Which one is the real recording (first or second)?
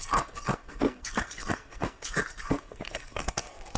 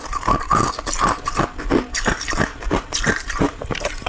second